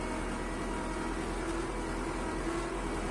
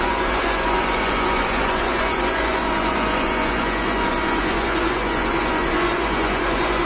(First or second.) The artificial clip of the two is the second